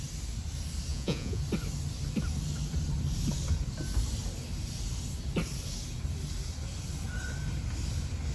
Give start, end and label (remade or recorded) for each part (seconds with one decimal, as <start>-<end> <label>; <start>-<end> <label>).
0.0-0.9 recorded; 0.9-1.4 remade; 1.4-8.3 recorded